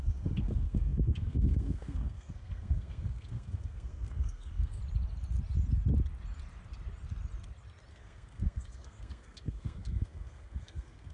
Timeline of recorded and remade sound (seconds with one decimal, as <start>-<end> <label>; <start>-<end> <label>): 0.0-4.8 remade; 4.8-7.9 recorded; 7.9-11.1 remade